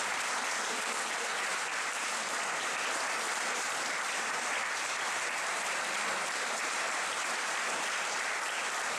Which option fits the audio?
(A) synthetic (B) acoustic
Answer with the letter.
A